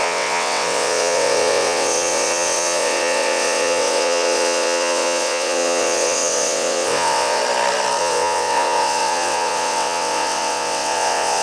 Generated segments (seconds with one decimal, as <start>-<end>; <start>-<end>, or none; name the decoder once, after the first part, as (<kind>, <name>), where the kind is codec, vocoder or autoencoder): 0.0-7.4 (vocoder, WaveNeXt); 8.0-11.4